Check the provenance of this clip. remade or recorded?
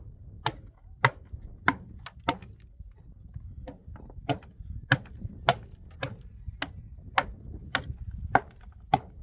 recorded